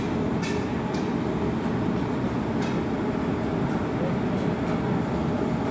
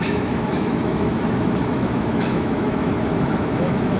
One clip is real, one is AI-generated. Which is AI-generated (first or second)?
second